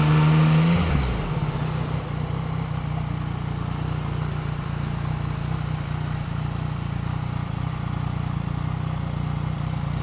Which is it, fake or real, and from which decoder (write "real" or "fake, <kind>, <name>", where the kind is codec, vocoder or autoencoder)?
real